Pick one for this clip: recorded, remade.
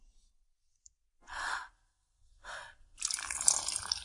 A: recorded